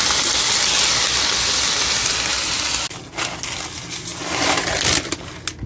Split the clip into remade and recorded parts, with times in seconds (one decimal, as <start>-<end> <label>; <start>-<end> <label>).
0.0-5.7 recorded